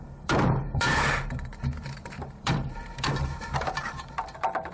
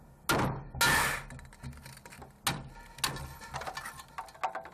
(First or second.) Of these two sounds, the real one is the second